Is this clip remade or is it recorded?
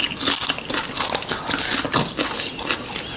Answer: recorded